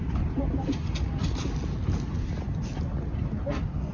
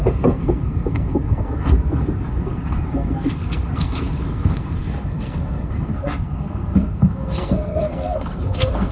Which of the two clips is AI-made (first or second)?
second